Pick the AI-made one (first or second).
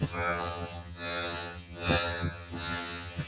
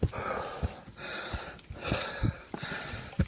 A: first